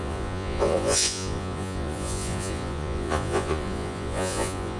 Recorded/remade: remade